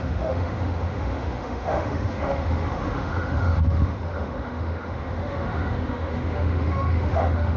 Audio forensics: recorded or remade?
remade